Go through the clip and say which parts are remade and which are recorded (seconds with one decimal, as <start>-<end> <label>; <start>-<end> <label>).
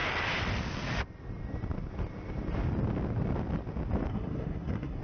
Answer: 0.0-4.1 recorded; 4.1-5.0 remade